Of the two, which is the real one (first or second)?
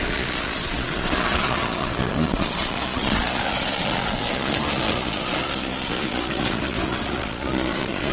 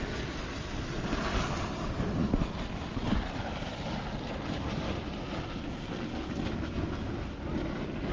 second